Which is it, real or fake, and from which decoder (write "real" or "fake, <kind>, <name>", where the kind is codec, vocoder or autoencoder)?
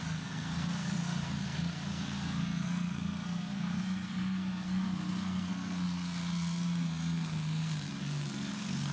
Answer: fake, codec, SNAC